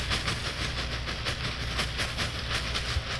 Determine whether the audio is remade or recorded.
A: recorded